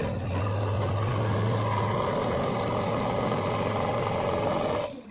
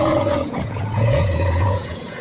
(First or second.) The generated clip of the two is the second